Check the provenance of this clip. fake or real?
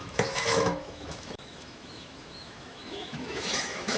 fake